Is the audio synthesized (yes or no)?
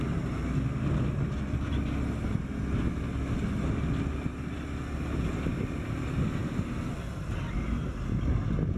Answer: no